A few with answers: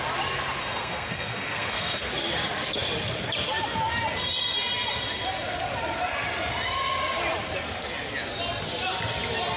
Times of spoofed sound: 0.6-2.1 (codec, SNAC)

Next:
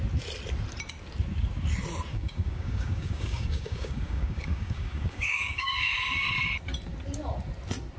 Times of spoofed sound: 2.1-5.9 (codec, DAC)

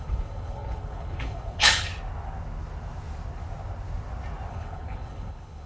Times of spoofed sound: 0.0-1.9 (codec, HILCodec); 4.5-5.7

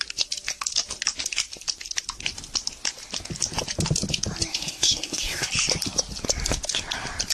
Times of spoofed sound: 4.5-5.5 (codec, SNAC)